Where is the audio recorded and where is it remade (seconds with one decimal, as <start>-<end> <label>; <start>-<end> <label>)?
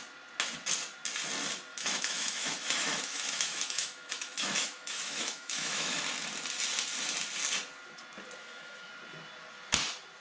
0.0-1.7 recorded; 1.7-6.0 remade; 6.0-8.4 recorded; 8.4-8.9 remade; 8.9-10.2 recorded